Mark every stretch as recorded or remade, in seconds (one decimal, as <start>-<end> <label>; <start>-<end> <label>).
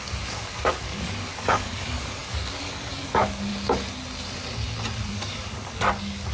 0.0-3.5 remade; 3.5-5.1 recorded; 5.1-6.3 remade